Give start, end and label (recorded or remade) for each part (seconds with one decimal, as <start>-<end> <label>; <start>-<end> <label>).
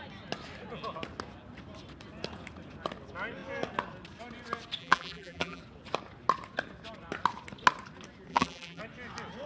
0.0-4.8 recorded; 4.8-5.6 remade; 5.6-8.3 recorded; 8.3-8.8 remade; 8.8-9.5 recorded